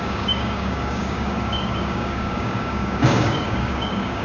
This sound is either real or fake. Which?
fake